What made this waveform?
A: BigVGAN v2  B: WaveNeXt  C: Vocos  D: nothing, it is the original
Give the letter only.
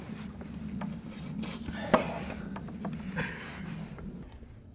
D